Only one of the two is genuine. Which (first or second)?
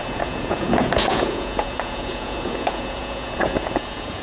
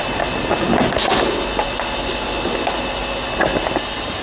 second